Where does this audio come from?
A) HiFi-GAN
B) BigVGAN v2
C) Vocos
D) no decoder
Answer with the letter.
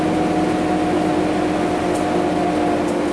D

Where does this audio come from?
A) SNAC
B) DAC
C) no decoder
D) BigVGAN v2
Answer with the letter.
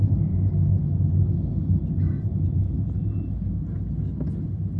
C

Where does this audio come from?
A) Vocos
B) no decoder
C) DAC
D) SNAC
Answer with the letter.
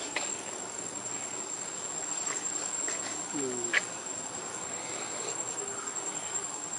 C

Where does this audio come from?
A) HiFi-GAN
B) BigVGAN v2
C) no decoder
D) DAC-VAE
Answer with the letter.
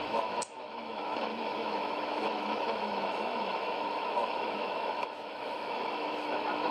D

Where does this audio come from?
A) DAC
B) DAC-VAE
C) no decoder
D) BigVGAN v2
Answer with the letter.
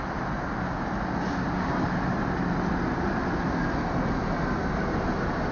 C